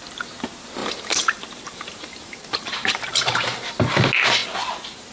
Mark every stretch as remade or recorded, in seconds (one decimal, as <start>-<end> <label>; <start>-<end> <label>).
0.0-0.8 recorded; 0.8-3.9 remade; 3.9-5.1 recorded